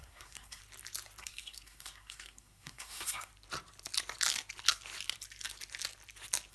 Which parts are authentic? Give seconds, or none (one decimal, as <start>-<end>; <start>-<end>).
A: 0.6-1.2; 3.3-6.5